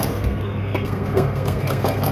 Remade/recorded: remade